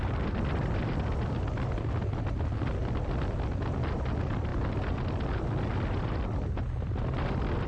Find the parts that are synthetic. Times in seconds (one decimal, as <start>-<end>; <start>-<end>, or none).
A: none